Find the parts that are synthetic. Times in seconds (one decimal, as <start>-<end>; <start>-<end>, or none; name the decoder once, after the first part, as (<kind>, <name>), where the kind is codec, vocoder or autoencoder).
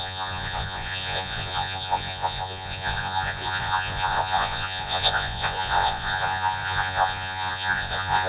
0.0-8.3 (vocoder, Vocos)